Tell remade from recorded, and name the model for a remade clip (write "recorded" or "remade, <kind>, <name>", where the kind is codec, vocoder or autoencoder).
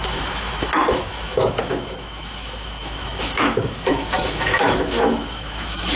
remade, autoencoder, DAC-VAE